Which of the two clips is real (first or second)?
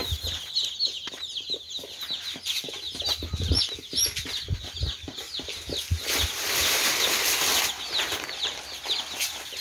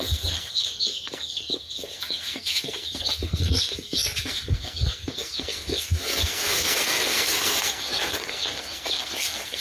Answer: first